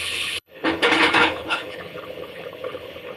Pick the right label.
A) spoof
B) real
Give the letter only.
A